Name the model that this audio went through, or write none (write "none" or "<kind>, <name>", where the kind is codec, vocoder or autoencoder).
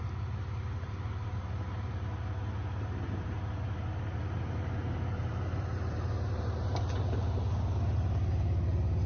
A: vocoder, BigVGAN v2